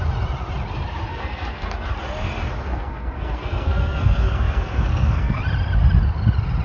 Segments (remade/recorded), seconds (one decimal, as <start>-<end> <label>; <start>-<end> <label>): 0.0-1.1 recorded; 1.1-1.9 remade; 1.9-2.6 recorded; 2.6-5.4 remade; 5.4-6.6 recorded